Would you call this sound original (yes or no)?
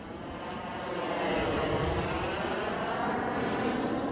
yes